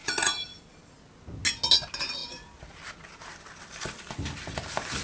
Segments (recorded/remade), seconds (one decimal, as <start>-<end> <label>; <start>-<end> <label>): 0.0-0.6 remade; 0.6-5.0 recorded